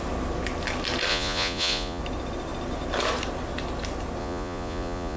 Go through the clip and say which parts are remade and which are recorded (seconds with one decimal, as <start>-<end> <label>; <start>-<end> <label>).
0.0-1.1 recorded; 1.1-2.0 remade; 2.0-4.2 recorded; 4.2-5.2 remade